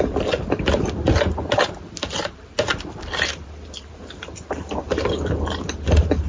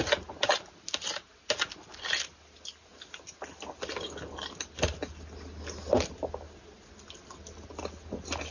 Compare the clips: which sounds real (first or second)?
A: second